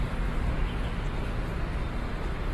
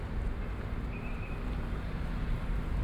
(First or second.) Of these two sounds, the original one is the first